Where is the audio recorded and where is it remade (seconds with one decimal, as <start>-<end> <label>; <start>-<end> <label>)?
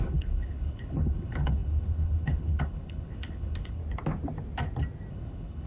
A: 0.0-3.8 remade; 3.8-5.1 recorded; 5.1-5.7 remade